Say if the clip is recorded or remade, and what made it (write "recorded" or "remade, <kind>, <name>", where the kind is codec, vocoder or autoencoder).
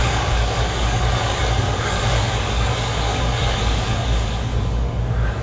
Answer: remade, codec, DAC